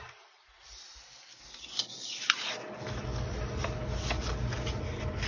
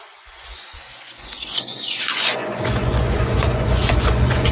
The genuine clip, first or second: first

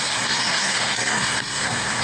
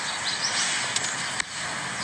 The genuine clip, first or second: second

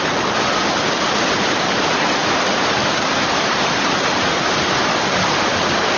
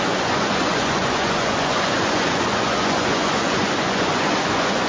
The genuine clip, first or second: first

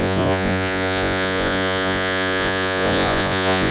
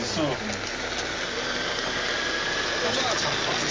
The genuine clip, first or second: second